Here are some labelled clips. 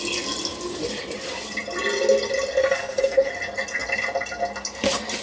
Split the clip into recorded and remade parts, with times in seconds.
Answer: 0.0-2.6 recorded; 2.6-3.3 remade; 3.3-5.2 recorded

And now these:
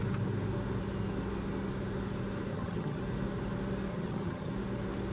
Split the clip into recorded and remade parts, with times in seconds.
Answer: 0.0-2.5 recorded; 2.5-3.0 remade; 3.0-3.9 recorded; 3.9-4.5 remade; 4.5-5.1 recorded

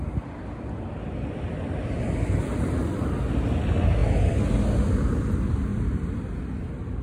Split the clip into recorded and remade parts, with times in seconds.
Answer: 0.0-7.0 recorded